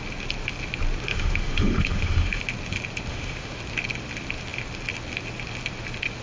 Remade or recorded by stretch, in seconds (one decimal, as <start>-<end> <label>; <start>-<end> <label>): 0.0-1.1 recorded; 1.1-2.4 remade; 2.4-3.1 recorded; 3.1-3.6 remade; 3.6-6.2 recorded